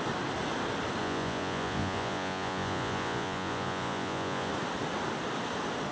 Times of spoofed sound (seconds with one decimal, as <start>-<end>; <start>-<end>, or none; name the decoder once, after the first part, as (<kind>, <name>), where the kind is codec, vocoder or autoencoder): 1.0-4.5 (vocoder, Vocos)